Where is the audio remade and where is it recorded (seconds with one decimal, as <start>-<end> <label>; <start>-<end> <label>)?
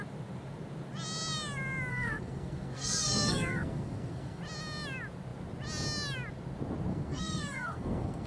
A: 0.0-1.9 recorded; 1.9-4.4 remade; 4.4-6.9 recorded; 6.9-8.3 remade